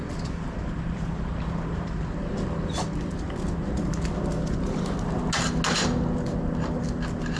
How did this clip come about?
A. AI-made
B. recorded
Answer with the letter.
B